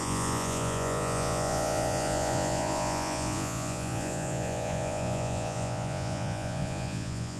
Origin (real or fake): fake